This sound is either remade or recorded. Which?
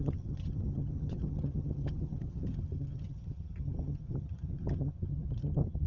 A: remade